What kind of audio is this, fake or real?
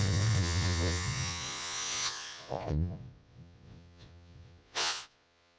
fake